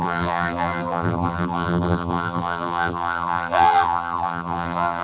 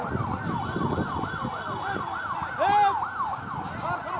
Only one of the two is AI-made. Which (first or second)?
first